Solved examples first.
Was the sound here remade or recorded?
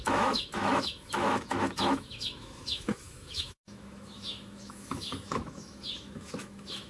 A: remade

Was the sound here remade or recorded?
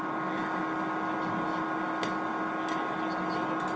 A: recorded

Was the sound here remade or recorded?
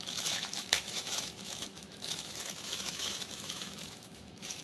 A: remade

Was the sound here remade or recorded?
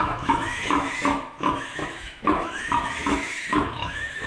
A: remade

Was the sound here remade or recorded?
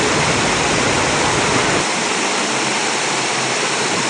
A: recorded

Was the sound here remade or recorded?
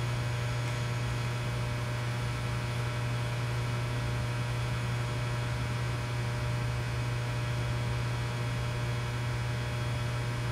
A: recorded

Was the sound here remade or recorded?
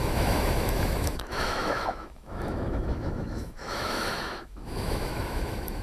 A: remade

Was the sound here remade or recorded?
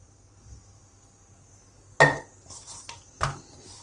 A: recorded